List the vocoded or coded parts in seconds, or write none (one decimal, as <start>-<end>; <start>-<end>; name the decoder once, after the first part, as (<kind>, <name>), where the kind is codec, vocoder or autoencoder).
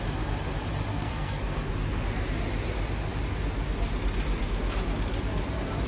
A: 0.9-1.7 (codec, SNAC)